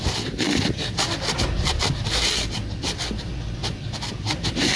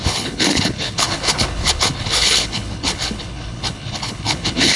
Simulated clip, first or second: second